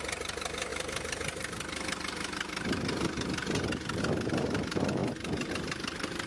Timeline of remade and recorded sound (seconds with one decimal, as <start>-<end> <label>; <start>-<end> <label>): 0.0-6.3 recorded